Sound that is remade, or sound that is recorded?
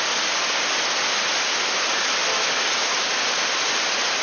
recorded